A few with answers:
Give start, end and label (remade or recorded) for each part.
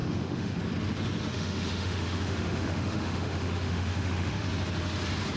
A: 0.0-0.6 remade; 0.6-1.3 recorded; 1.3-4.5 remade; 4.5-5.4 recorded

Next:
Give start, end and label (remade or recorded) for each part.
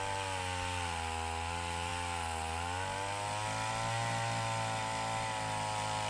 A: 0.0-6.1 recorded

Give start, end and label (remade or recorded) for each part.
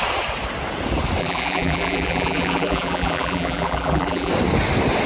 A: 0.0-1.2 recorded; 1.2-4.3 remade; 4.3-5.1 recorded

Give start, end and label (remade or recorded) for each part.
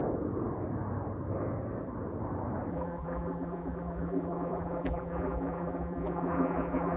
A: 0.0-2.7 recorded; 2.7-7.0 remade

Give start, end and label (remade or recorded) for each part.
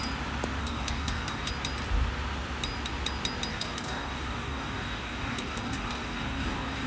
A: 0.0-0.6 recorded; 0.6-1.5 remade; 1.5-3.5 recorded; 3.5-6.9 remade